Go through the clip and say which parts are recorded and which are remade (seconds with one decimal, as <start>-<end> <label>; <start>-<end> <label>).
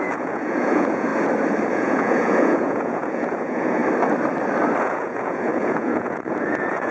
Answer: 0.0-1.1 remade; 1.1-1.7 recorded; 1.7-3.8 remade; 3.8-4.8 recorded; 4.8-6.9 remade